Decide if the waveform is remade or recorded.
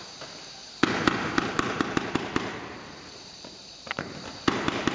remade